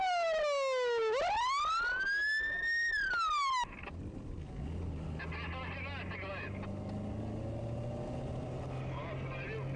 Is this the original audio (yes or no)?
yes